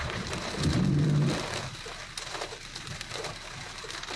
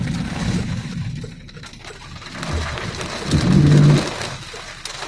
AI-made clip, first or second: first